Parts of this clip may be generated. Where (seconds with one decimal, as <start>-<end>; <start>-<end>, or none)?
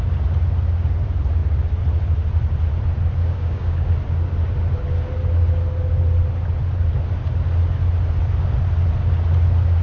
3.2-3.9